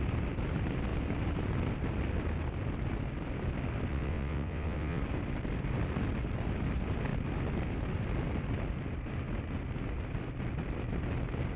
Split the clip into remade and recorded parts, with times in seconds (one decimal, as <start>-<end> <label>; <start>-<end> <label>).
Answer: 0.0-3.9 recorded; 3.9-5.0 remade; 5.0-11.6 recorded